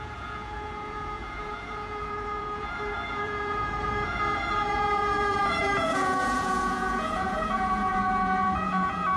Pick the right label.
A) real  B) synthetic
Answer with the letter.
B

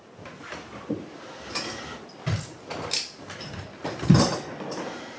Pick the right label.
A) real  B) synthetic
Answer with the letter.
A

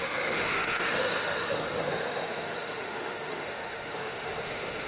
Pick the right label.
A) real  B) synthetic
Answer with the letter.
B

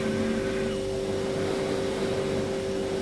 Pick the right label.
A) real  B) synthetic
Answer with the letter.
A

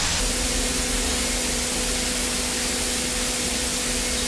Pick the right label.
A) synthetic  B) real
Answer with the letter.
B